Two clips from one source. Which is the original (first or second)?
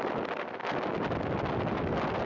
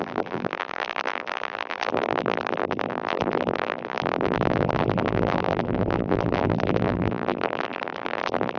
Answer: first